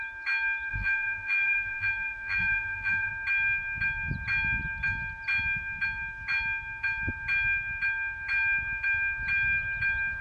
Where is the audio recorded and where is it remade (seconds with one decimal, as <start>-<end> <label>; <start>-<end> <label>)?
0.0-0.7 recorded; 0.7-3.1 remade; 3.1-10.2 recorded